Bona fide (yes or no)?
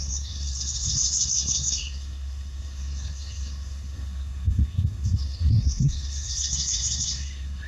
no